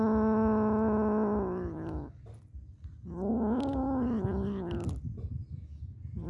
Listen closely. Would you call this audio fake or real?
real